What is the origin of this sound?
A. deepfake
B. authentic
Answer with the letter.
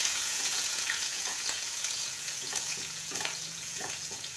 A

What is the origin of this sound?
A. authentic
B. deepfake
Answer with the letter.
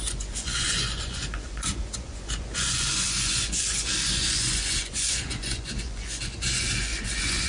B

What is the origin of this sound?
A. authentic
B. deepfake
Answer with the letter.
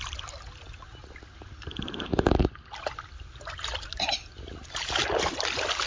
A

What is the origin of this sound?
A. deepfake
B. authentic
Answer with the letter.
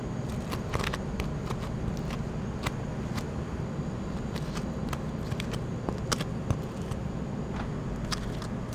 B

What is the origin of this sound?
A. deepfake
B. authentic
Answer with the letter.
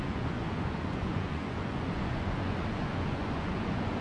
A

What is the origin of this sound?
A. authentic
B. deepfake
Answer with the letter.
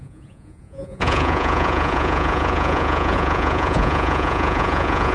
B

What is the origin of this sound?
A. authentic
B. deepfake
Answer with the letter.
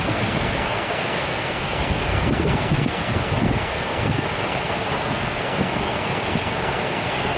B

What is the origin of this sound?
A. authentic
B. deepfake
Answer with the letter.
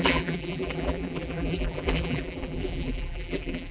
B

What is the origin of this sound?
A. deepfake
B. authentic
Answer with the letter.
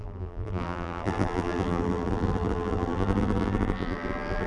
A